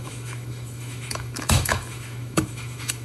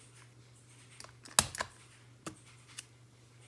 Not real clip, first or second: first